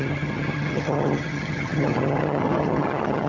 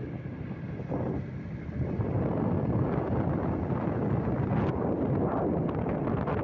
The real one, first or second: second